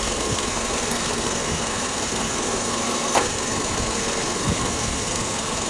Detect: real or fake fake